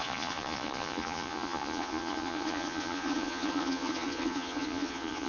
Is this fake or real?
fake